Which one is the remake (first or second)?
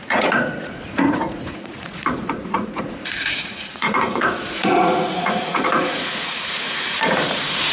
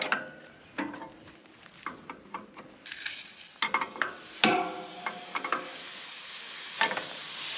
first